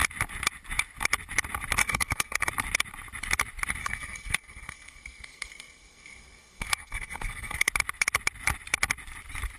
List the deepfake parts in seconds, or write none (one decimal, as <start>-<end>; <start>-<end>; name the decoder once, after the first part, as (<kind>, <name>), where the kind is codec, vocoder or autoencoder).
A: 1.8-2.5 (codec, SNAC); 3.8-7.7